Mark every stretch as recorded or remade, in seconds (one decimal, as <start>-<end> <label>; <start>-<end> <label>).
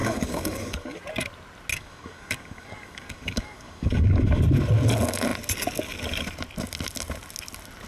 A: 0.0-1.0 remade; 1.0-1.7 recorded; 1.7-4.4 remade; 4.4-7.9 recorded